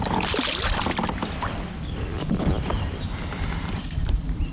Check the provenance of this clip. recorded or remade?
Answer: remade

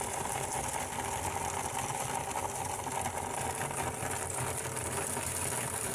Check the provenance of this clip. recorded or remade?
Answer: recorded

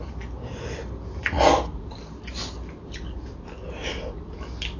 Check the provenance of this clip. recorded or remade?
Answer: recorded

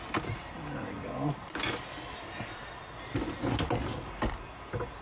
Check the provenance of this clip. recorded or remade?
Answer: recorded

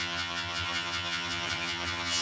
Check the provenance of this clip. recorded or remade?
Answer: remade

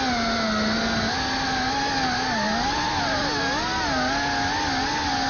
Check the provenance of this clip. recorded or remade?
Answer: recorded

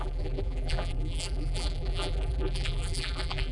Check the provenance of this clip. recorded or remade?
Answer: remade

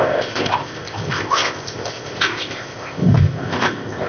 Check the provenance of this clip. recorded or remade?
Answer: remade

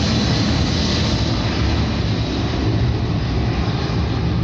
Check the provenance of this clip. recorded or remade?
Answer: recorded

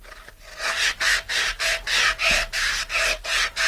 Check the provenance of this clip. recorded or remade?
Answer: recorded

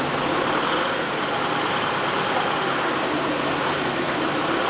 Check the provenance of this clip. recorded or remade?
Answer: remade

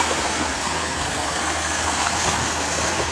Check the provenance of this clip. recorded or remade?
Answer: remade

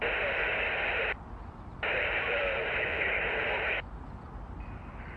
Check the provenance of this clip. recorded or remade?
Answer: remade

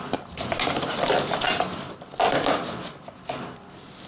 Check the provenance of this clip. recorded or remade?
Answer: recorded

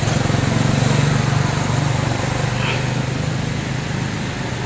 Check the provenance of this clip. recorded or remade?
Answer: recorded